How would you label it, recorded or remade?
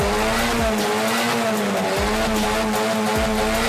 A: recorded